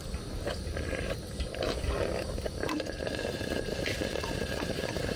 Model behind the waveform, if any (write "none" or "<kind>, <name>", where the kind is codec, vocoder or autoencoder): vocoder, BigVGAN v2